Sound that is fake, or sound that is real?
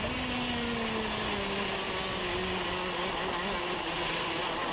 real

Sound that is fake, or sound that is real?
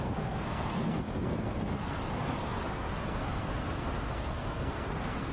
fake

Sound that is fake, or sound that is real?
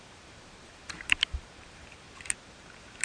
fake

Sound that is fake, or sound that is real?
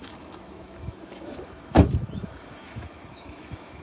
fake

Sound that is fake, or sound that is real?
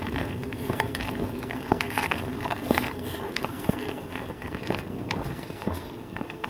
fake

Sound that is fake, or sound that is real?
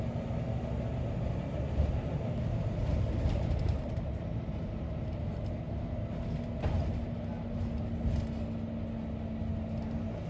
real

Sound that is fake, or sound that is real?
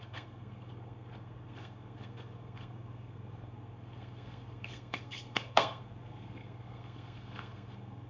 fake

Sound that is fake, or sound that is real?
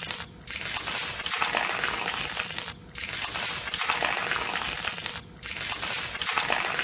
real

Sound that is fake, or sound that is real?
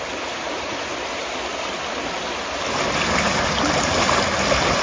real